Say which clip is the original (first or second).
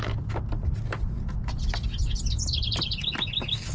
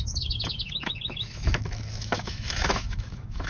first